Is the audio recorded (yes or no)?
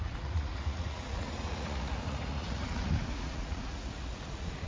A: no